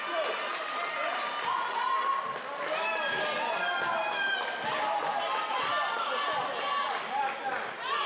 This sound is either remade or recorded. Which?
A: recorded